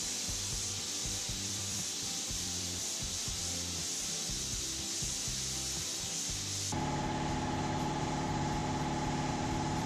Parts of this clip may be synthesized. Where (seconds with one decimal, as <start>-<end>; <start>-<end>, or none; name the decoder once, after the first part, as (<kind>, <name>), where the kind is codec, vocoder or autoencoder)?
0.0-3.4 (vocoder, BigVGAN v2); 7.9-8.6; 9.3-9.9